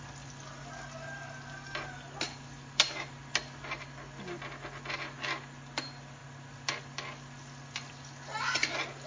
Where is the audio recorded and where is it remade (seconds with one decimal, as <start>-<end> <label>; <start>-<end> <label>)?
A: 0.0-9.1 recorded